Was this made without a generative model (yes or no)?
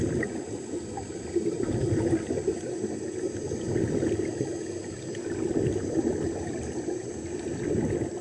yes